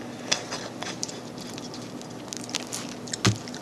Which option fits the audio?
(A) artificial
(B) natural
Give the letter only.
B